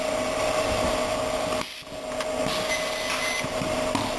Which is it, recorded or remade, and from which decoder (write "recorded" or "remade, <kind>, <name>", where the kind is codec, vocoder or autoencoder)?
recorded